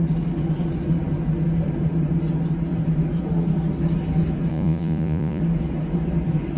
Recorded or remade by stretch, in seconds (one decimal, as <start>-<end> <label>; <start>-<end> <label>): 0.0-4.5 recorded; 4.5-5.4 remade; 5.4-6.6 recorded